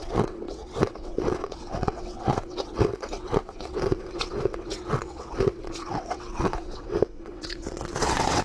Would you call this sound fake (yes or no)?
yes